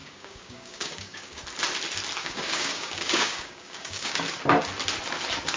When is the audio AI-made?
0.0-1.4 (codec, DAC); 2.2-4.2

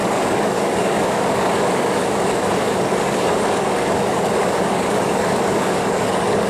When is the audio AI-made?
0.0-6.5 (codec, DAC)